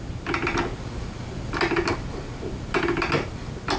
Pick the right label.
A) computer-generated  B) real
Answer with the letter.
B